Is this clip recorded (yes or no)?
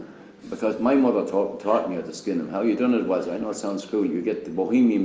yes